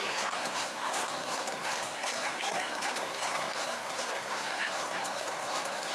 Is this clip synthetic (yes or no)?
yes